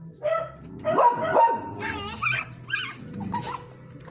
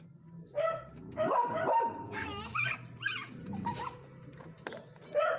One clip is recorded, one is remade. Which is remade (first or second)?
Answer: second